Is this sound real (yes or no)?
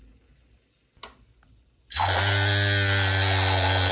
yes